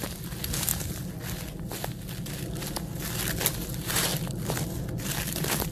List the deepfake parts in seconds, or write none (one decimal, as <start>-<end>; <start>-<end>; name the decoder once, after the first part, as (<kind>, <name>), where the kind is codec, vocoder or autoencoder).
none